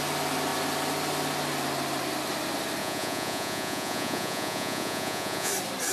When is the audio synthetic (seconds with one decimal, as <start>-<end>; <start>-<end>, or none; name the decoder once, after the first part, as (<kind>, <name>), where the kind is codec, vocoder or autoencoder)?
2.8-5.5 (vocoder, Vocos)